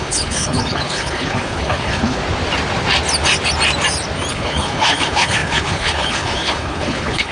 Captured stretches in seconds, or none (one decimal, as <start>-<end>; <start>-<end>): 2.2-4.3